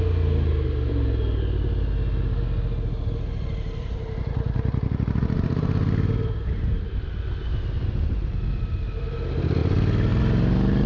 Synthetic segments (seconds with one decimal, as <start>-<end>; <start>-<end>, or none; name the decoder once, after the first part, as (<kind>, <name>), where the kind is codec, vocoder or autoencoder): none